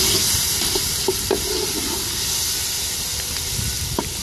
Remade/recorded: recorded